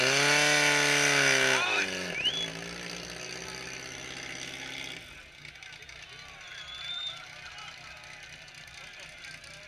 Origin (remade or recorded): recorded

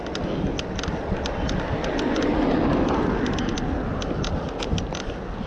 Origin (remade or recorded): recorded